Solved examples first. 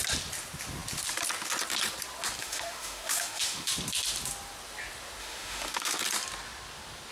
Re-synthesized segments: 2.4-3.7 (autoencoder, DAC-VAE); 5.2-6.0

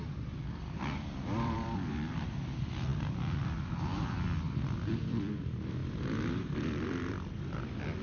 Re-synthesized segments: 0.0-8.0 (vocoder, BigVGAN v2)

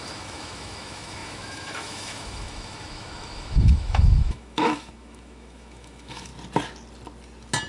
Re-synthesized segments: 0.0-6.3 (autoencoder, DAC-VAE)